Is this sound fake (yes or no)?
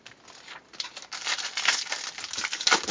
no